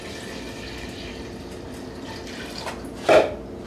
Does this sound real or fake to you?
real